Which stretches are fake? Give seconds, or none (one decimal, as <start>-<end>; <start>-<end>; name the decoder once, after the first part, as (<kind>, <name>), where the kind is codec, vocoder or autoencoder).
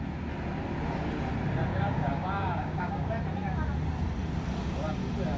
1.7-3.1 (codec, DAC)